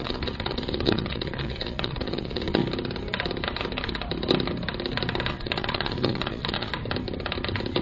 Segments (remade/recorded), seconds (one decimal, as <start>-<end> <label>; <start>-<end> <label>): 0.0-2.6 remade; 2.6-5.3 recorded; 5.3-6.7 remade; 6.7-7.8 recorded